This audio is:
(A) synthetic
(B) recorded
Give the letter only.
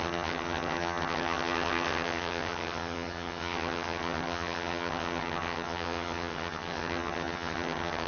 A